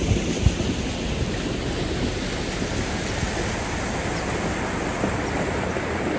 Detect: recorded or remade recorded